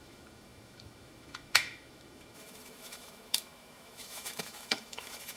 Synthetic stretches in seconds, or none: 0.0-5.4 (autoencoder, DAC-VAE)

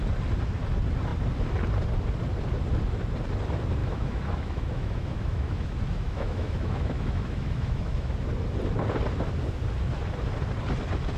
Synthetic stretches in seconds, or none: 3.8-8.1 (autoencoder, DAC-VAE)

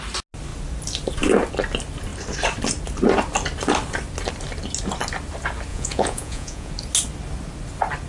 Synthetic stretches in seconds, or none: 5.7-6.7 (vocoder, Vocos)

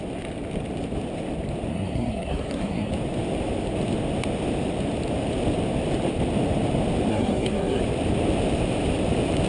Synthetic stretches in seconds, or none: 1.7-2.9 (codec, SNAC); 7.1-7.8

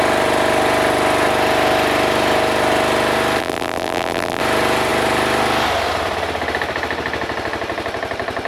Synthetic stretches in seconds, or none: 3.4-4.4 (vocoder, BigVGAN v2)

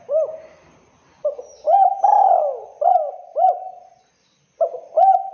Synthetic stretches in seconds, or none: none